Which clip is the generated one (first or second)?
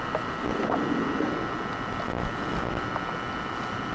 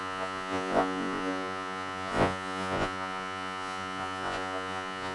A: second